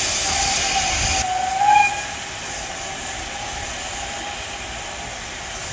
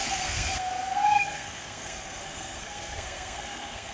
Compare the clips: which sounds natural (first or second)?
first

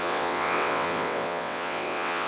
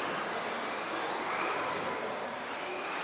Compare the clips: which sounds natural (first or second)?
second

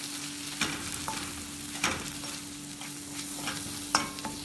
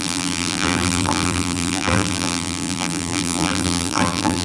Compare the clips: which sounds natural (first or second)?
first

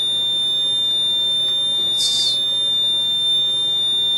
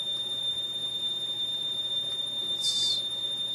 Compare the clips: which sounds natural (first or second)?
first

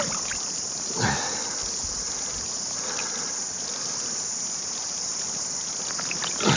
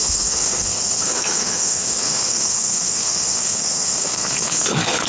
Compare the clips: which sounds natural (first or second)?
first